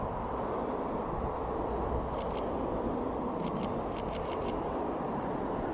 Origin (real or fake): real